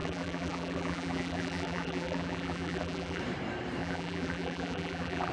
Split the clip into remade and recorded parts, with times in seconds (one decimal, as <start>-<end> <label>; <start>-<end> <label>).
0.0-3.2 remade; 3.2-3.8 recorded; 3.8-5.3 remade